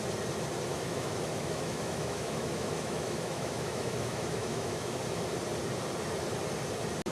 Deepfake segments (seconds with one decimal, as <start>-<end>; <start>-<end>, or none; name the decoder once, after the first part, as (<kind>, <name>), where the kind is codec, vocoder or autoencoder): 0.7-5.0 (autoencoder, DAC-VAE)